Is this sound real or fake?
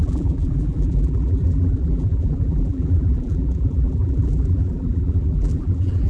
fake